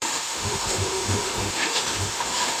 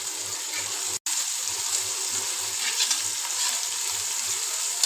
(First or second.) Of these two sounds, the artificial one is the first